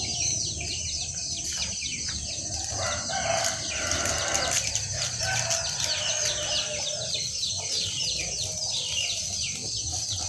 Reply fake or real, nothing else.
real